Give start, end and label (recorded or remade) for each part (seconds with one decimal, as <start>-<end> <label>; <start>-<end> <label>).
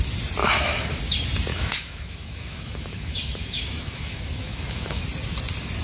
0.0-0.4 recorded; 0.4-1.0 remade; 1.0-1.5 recorded; 1.5-5.0 remade; 5.0-5.8 recorded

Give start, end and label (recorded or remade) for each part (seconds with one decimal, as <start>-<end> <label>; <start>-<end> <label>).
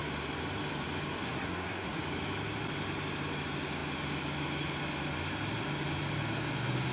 0.0-1.2 recorded; 1.2-2.0 remade; 2.0-6.9 recorded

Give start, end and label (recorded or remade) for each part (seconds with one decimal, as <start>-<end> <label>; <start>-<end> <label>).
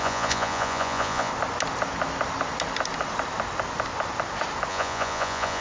0.0-1.3 remade; 1.3-4.7 recorded; 4.7-5.6 remade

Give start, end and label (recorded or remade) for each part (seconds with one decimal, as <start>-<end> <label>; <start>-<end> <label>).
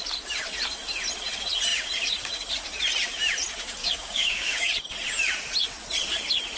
0.0-3.8 recorded; 3.8-4.7 remade; 4.7-6.6 recorded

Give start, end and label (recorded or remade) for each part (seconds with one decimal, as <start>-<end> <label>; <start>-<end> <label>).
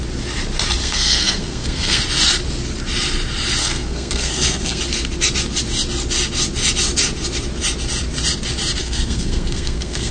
0.0-0.8 recorded; 0.8-2.0 remade; 2.0-3.6 recorded; 3.6-4.8 remade; 4.8-8.8 recorded; 8.8-10.1 remade